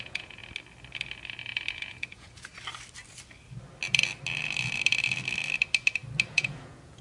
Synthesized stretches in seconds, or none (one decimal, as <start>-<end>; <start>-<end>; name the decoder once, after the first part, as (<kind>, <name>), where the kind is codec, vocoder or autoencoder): 0.0-0.4 (vocoder, Vocos); 1.7-2.5; 6.3-7.0